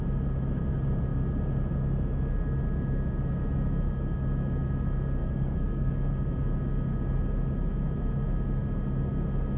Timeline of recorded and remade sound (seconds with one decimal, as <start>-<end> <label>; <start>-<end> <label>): 0.0-5.2 recorded; 5.2-5.9 remade; 5.9-9.6 recorded